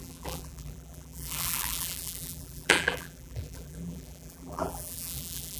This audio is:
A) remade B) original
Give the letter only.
A